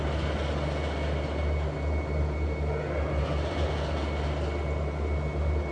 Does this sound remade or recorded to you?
recorded